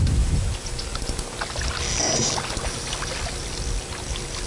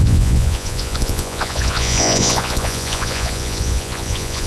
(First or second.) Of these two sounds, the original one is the first